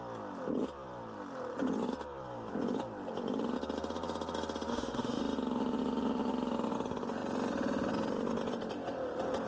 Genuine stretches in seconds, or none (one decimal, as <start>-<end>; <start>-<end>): 0.0-4.7; 5.2-9.5